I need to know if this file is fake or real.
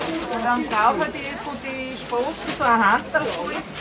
real